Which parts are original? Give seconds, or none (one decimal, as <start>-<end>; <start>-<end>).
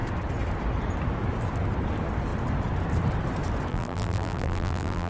0.0-3.7